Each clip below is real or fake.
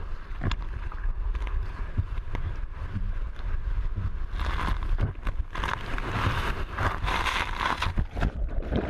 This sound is real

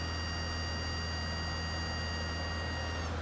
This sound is real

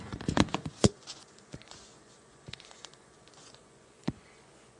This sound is fake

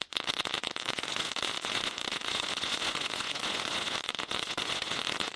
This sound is fake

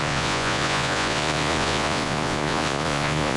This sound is fake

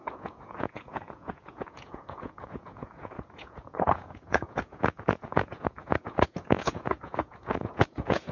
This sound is fake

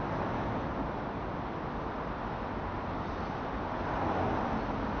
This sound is real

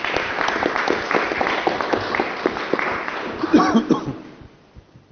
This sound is real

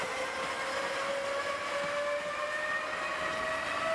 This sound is real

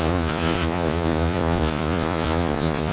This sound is fake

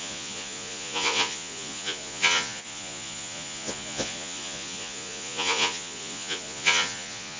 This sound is fake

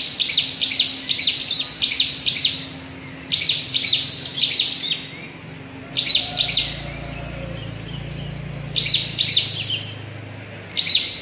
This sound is real